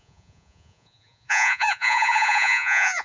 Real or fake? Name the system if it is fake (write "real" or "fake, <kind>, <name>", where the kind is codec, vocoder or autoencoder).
fake, vocoder, Vocos